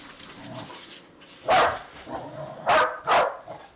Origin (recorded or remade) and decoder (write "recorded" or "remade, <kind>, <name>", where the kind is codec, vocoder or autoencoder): remade, vocoder, BigVGAN v2